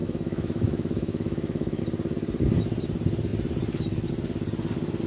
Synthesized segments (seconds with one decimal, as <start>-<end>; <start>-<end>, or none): 0.0-1.8